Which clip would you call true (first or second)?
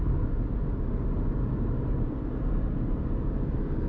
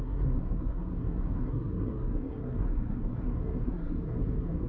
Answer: first